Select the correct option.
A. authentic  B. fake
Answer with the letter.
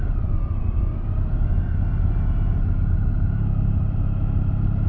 A